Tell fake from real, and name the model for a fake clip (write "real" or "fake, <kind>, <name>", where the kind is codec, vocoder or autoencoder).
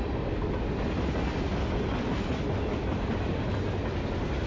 real